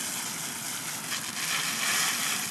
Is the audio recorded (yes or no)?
yes